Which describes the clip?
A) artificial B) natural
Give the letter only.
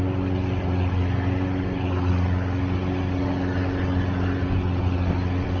B